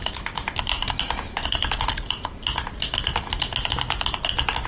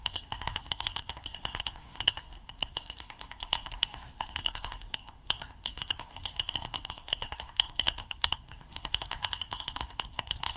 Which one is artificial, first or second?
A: second